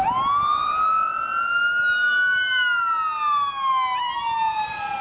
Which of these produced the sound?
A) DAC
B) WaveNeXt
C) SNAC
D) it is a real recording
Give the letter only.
D